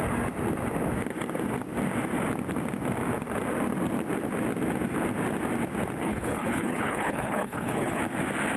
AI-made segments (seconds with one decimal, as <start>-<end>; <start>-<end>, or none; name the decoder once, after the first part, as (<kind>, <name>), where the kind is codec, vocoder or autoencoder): 6.0-8.0 (codec, HILCodec)